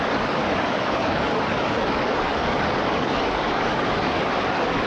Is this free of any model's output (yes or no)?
no